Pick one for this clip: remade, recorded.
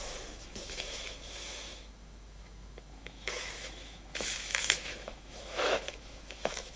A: remade